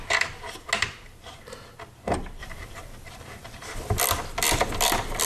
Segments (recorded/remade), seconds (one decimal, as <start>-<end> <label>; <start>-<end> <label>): 0.0-2.4 recorded; 2.4-4.0 remade; 4.0-5.3 recorded